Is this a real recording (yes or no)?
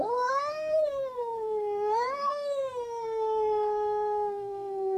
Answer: no